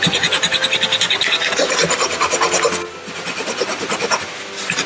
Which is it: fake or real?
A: real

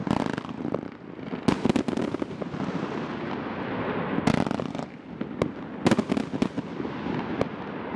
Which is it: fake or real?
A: real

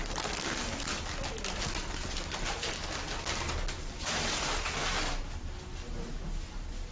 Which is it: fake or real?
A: real